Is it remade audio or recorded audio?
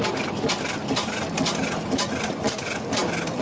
recorded